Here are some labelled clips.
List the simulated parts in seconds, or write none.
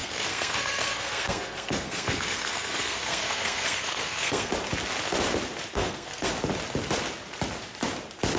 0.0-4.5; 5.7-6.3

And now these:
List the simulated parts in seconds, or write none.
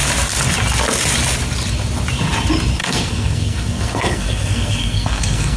2.8-5.6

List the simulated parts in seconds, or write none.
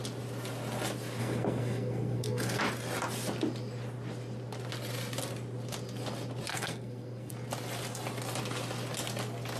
1.2-2.6; 6.5-7.3